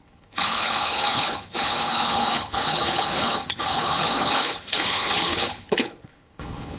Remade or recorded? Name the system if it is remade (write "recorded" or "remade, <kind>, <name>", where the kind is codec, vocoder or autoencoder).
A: remade, codec, HILCodec